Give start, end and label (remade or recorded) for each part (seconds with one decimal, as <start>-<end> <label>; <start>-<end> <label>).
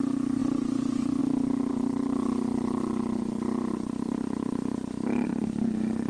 0.0-0.4 recorded; 0.4-1.2 remade; 1.2-6.1 recorded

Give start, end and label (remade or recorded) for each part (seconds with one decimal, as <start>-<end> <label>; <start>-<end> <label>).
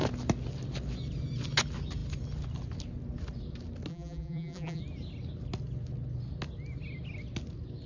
0.0-3.9 recorded; 3.9-4.8 remade; 4.8-7.9 recorded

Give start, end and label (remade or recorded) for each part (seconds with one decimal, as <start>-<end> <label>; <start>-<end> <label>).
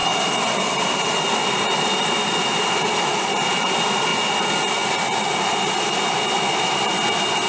0.0-2.1 remade; 2.1-7.5 recorded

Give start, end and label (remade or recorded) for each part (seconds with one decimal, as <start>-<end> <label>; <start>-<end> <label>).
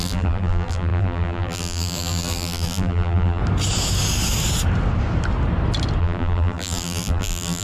0.0-3.4 remade; 3.4-6.0 recorded; 6.0-7.6 remade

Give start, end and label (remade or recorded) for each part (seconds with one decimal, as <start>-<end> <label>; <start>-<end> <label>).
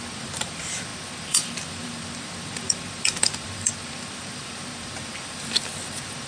0.0-6.3 remade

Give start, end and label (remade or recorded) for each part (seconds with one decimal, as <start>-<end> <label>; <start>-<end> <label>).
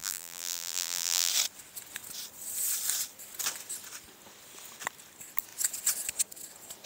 0.0-1.3 remade; 1.3-6.9 recorded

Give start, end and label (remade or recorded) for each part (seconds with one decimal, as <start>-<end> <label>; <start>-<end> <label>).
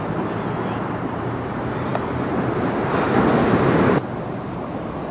0.0-5.1 recorded